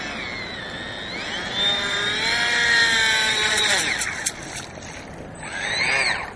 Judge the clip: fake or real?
real